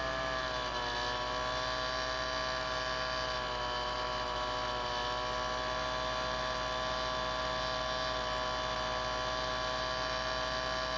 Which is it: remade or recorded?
recorded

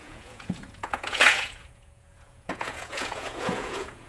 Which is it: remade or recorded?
remade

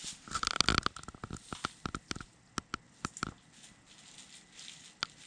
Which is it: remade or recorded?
recorded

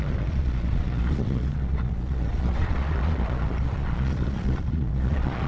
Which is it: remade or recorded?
remade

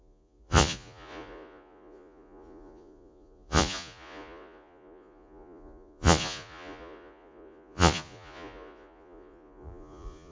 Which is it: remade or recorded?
remade